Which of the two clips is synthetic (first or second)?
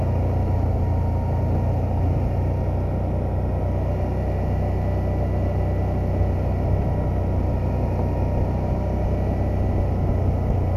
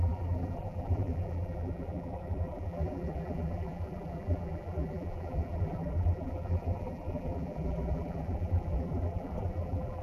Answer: second